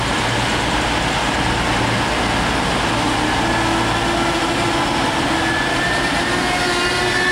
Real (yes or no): yes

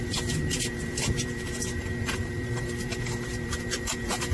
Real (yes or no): no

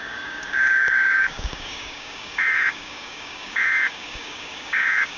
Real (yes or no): no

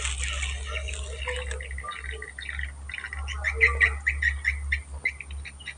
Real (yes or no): yes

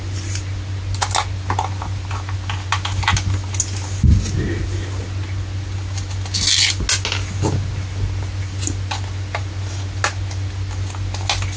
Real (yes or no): yes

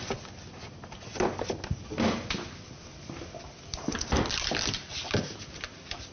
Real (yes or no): yes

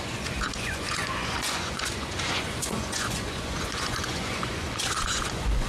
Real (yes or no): no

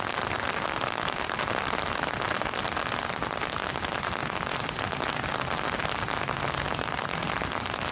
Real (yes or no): yes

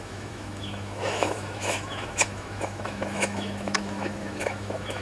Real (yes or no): no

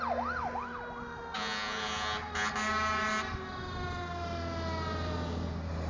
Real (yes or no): yes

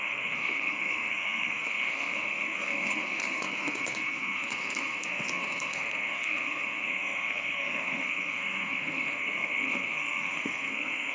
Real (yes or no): no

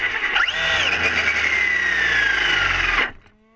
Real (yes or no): yes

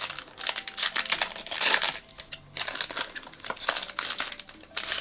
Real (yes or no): yes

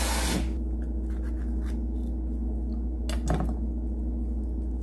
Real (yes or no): yes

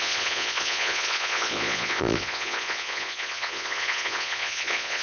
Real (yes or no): no